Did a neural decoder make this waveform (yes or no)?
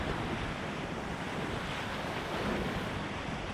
no